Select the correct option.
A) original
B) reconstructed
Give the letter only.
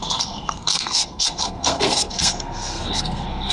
B